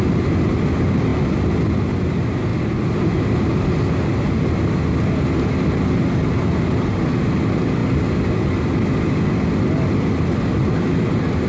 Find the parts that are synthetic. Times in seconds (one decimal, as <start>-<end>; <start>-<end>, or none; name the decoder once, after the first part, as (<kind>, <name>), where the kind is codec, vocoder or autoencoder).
none